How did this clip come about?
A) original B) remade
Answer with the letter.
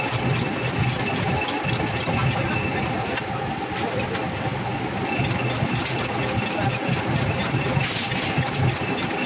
A